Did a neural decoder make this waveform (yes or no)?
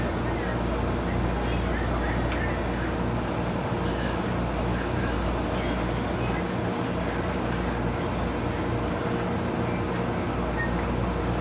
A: no